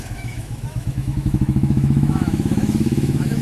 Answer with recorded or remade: remade